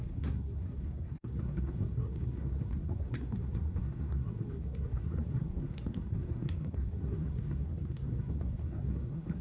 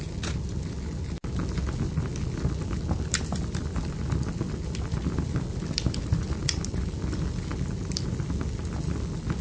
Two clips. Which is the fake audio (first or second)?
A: first